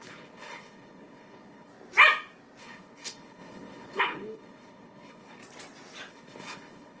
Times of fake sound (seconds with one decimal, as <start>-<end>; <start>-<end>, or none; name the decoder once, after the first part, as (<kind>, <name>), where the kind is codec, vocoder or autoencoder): 0.0-1.7 (codec, HILCodec); 2.6-5.4; 6.1-7.0